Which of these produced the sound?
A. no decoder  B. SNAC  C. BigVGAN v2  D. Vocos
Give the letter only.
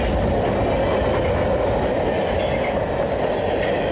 A